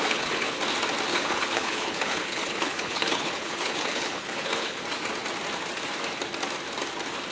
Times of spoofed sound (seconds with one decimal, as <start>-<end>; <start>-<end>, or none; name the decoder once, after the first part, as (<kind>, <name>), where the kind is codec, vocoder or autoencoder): 0.0-0.6 (codec, HILCodec); 1.1-4.8